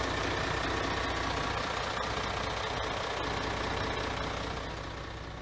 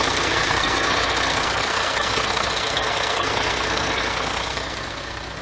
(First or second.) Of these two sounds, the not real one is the second